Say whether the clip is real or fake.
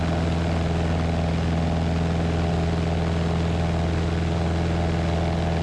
real